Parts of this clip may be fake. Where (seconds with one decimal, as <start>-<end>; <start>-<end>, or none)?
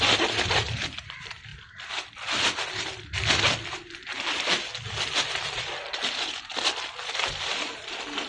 0.0-1.5; 3.7-4.7; 5.6-6.5; 7.6-8.3